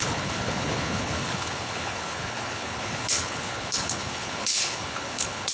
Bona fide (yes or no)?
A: no